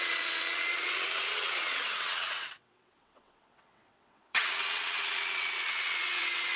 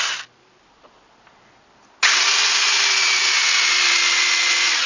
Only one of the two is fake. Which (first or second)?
first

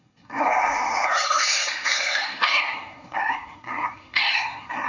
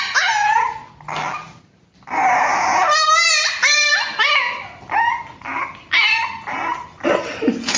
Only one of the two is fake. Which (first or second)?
first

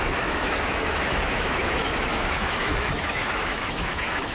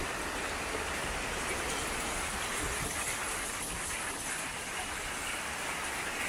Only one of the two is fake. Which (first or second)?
first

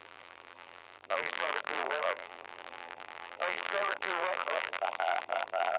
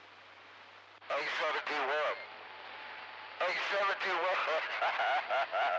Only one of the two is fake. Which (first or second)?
first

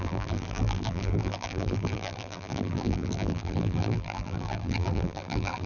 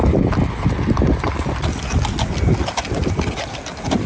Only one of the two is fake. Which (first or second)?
first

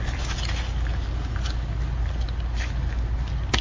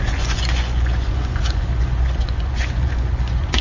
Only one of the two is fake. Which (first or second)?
second